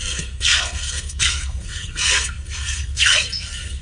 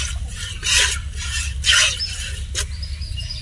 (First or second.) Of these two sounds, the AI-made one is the first